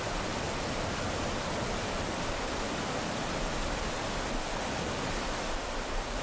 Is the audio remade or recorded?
recorded